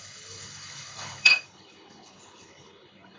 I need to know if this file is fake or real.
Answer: fake